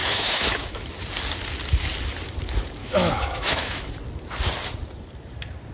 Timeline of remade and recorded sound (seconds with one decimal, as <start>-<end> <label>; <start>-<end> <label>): 0.0-0.8 remade; 0.8-2.8 recorded; 2.8-3.8 remade; 3.8-5.7 recorded